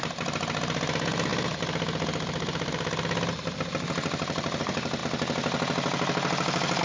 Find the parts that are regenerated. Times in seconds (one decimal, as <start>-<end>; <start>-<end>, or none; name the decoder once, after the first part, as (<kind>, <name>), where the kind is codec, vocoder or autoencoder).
none